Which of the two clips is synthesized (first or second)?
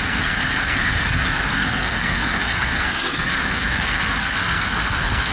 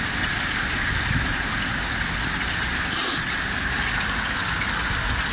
first